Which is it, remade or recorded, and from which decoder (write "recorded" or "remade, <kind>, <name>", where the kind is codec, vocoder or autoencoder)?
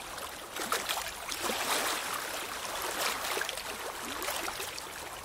recorded